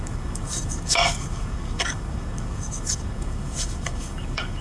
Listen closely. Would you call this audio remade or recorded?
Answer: remade